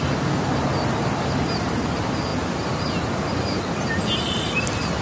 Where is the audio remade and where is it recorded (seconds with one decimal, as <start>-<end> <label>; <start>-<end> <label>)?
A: 0.0-5.0 recorded